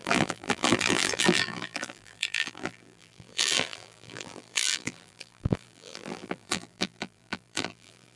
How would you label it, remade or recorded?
remade